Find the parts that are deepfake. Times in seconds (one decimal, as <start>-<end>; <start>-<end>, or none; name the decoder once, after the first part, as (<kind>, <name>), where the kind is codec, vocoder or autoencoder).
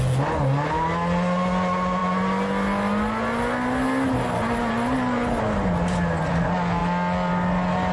none